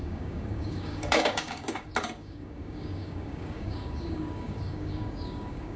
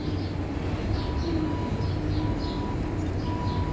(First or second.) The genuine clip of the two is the second